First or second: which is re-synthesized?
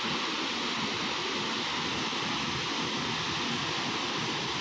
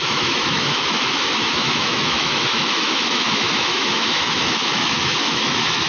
second